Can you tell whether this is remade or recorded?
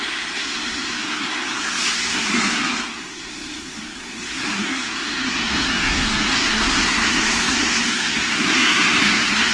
remade